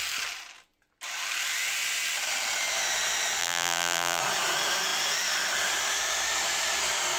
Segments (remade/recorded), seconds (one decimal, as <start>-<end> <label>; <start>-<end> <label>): 0.0-3.4 recorded; 3.4-4.2 remade; 4.2-7.2 recorded

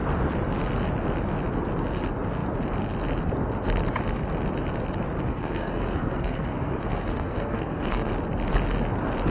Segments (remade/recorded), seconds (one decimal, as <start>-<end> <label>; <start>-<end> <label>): 0.0-5.3 recorded; 5.3-8.1 remade; 8.1-9.3 recorded

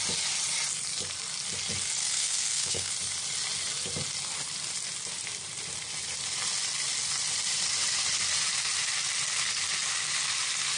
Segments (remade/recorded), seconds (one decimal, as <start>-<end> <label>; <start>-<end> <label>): 0.0-2.0 recorded; 2.0-2.9 remade; 2.9-10.8 recorded

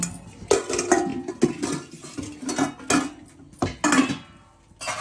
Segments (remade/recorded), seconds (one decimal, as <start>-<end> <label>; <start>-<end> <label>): 0.0-5.0 recorded